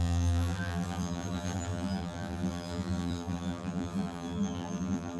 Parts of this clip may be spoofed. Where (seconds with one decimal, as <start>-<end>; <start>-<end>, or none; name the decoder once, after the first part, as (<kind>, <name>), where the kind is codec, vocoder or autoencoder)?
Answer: 0.0-5.2 (vocoder, BigVGAN v2)